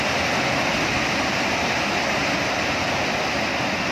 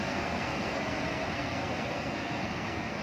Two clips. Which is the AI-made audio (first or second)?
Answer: second